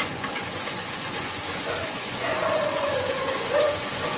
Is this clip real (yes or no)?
no